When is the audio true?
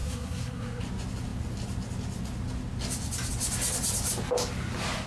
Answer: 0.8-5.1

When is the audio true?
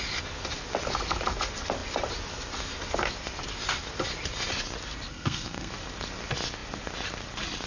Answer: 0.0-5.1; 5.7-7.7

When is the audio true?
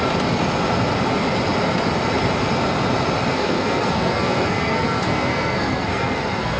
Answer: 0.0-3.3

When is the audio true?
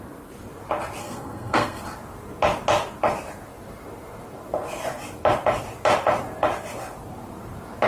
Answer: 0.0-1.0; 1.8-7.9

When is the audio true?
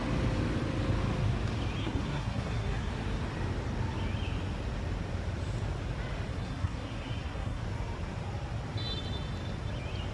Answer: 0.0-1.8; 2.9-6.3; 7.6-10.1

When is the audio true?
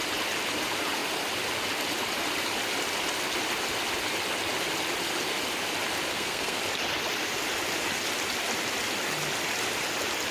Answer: 0.0-6.1; 6.6-10.3